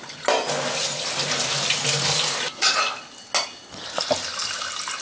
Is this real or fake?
real